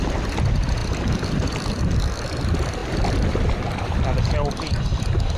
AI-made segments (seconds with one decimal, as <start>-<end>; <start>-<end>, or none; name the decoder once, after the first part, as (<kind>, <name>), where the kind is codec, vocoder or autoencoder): none